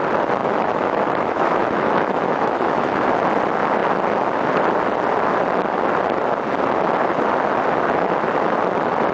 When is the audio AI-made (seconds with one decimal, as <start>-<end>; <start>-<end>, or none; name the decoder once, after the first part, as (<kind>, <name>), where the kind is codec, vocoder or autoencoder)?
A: 0.4-3.1 (autoencoder, DAC-VAE)